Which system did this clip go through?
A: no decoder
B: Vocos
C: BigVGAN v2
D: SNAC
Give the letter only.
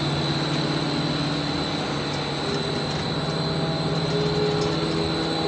A